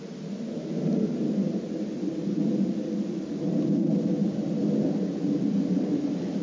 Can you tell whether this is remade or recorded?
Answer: recorded